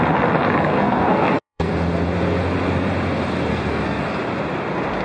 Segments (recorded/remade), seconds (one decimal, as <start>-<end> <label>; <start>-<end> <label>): 0.0-0.7 recorded; 0.7-1.7 remade; 1.7-3.5 recorded; 3.5-4.0 remade; 4.0-5.0 recorded